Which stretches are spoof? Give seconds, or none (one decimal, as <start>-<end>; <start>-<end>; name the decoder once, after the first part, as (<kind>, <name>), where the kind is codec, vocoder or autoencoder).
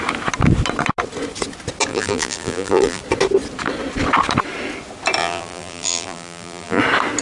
1.9-3.0 (vocoder, BigVGAN v2); 5.2-6.8